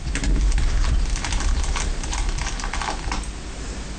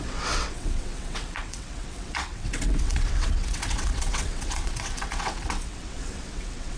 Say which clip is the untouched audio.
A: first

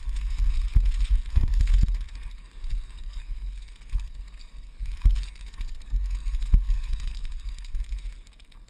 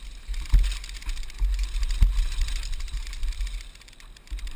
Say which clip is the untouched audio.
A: second